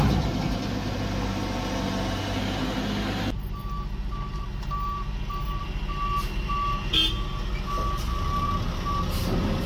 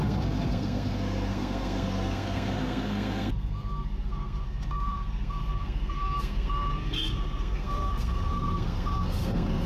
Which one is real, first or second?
first